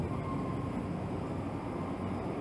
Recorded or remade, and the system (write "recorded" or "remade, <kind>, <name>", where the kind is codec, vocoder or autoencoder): recorded